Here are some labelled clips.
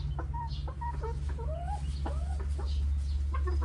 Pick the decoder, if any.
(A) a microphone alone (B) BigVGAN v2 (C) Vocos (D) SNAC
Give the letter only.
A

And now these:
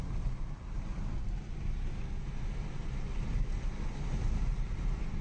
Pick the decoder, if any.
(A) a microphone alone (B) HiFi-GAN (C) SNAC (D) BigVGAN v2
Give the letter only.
A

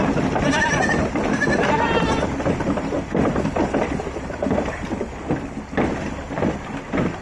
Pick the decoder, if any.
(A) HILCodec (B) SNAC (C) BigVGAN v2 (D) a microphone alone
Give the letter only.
C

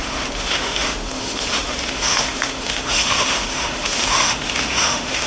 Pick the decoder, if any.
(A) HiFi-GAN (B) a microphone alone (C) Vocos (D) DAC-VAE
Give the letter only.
D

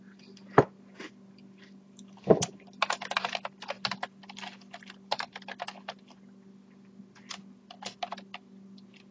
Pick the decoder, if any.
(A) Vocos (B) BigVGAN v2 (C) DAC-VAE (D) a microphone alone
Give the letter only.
D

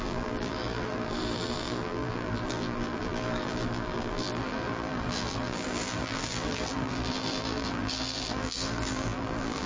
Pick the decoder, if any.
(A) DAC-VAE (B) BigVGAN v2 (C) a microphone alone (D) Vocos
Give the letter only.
B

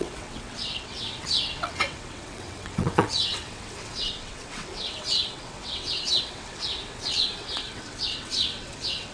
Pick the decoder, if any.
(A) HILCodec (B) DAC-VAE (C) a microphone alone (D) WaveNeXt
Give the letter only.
D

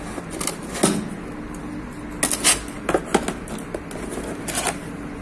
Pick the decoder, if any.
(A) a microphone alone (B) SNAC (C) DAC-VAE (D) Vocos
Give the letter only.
A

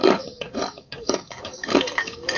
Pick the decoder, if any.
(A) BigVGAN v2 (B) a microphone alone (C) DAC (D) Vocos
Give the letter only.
C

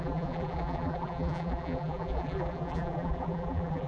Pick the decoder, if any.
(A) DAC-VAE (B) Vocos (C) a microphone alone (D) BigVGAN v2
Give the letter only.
D